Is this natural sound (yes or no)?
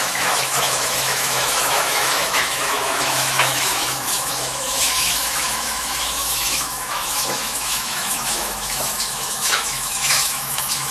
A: no